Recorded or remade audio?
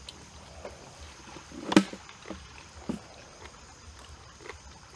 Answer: recorded